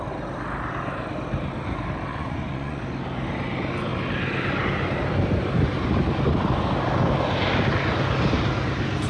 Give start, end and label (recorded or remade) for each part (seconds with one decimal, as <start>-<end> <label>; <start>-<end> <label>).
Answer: 0.0-2.1 recorded; 2.1-2.8 remade; 2.8-9.1 recorded